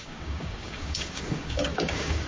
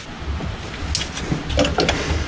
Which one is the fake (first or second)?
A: first